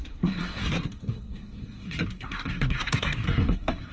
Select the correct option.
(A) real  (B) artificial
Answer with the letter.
B